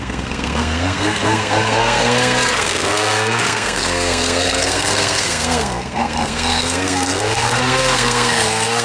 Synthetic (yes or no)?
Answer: yes